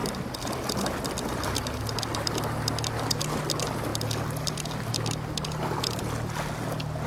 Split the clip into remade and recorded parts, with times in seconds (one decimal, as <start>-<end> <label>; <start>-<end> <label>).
0.0-7.1 recorded

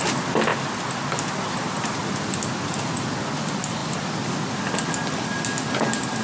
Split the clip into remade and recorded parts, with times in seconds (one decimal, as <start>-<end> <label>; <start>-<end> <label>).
0.0-3.8 recorded; 3.8-4.3 remade; 4.3-6.2 recorded